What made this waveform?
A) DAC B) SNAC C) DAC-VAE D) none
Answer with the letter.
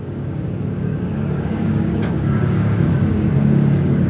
A